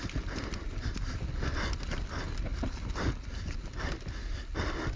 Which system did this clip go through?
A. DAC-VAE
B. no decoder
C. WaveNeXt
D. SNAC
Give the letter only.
B